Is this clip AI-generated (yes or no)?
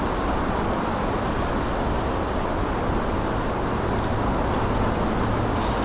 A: no